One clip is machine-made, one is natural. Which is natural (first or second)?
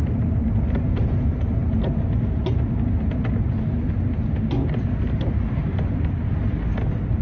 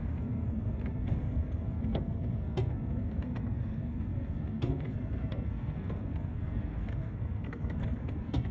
first